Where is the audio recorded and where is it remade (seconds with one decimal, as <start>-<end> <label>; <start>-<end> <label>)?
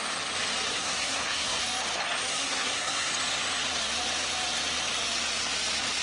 0.0-0.7 recorded; 0.7-1.6 remade; 1.6-2.3 recorded; 2.3-3.1 remade; 3.1-6.0 recorded